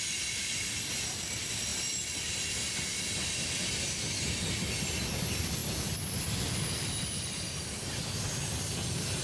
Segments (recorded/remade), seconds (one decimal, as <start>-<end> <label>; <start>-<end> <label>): 0.0-9.2 remade